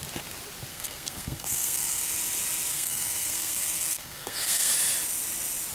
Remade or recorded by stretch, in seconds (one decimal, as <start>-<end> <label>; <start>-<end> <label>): 0.0-0.7 recorded; 0.7-2.1 remade; 2.1-2.7 recorded; 2.7-4.7 remade; 4.7-5.7 recorded